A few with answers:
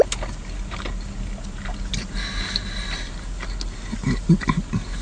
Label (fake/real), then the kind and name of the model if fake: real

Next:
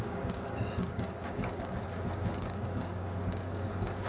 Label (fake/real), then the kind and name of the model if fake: fake, codec, DAC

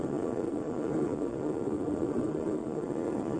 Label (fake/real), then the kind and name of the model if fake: fake, vocoder, Vocos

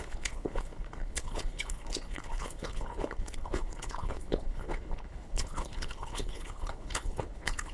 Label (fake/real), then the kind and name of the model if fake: fake, codec, HILCodec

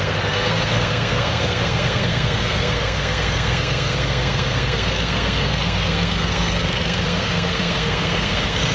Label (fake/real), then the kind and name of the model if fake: fake, codec, SNAC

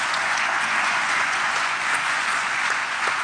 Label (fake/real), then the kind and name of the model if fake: fake, vocoder, Vocos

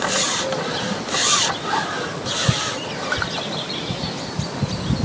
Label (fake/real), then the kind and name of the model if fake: real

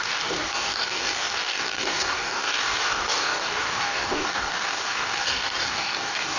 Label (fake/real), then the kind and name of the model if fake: fake, codec, DAC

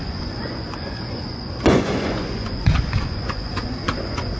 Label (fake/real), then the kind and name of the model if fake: fake, vocoder, Vocos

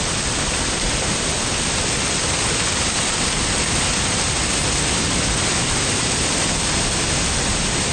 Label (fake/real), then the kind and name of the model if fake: real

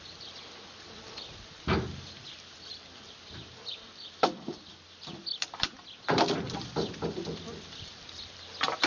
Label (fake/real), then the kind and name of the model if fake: real